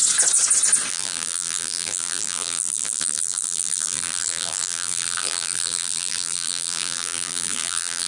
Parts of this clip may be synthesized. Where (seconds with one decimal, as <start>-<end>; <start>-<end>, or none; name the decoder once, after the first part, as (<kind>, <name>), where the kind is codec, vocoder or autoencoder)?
0.9-8.1 (vocoder, BigVGAN v2)